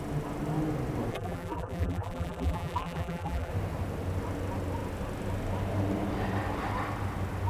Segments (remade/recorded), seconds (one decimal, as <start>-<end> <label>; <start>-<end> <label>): 0.0-1.1 recorded; 1.1-3.5 remade; 3.5-7.5 recorded